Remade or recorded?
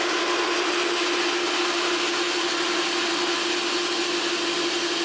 recorded